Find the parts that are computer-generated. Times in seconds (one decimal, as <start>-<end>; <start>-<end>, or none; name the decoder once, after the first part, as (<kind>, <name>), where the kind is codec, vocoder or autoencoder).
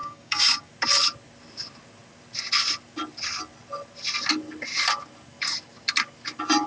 0.0-0.7 (codec, DAC)